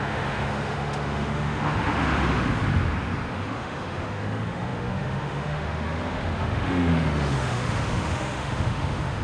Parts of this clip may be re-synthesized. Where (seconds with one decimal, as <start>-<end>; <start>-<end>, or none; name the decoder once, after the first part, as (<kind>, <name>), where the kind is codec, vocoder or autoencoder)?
0.0-2.6 (autoencoder, DAC-VAE); 3.3-9.2